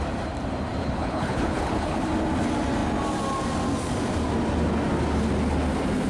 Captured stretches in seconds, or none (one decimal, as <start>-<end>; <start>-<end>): 0.0-0.8; 2.1-6.1